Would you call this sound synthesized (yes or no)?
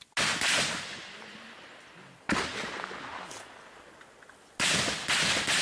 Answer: no